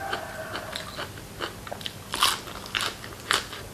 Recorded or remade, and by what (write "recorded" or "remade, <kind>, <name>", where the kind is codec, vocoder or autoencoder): recorded